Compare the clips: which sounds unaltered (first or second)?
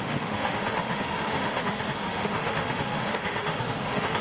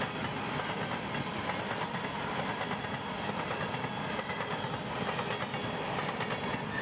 second